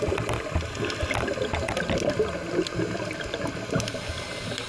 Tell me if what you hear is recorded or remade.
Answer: recorded